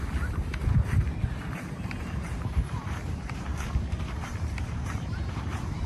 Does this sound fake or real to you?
fake